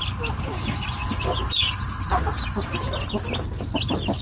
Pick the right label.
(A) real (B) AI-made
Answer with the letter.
A